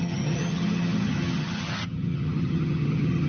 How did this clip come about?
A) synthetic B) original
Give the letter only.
A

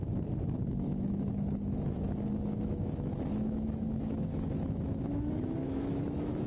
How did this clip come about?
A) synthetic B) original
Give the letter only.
A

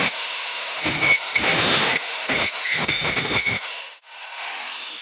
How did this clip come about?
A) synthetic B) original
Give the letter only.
A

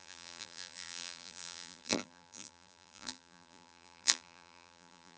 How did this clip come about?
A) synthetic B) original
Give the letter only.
A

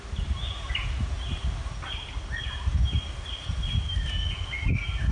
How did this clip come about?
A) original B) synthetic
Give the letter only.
A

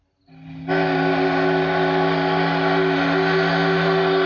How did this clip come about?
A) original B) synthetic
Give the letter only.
A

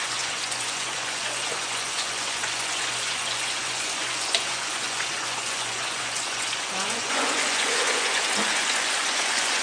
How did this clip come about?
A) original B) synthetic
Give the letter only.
B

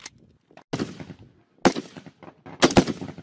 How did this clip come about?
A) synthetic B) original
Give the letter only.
B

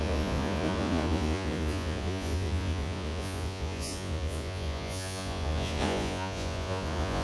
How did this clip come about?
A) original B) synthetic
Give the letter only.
B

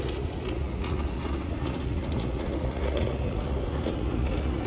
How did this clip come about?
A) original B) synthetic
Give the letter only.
B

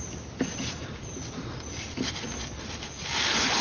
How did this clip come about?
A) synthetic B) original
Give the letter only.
B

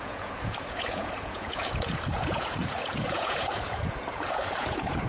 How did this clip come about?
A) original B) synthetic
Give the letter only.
B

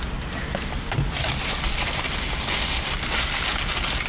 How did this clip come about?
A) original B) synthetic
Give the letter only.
A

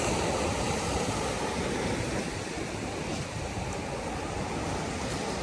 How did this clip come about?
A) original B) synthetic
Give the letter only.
A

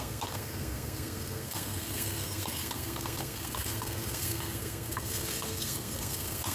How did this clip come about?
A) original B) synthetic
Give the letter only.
B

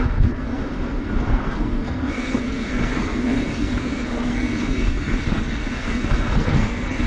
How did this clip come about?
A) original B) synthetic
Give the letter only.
B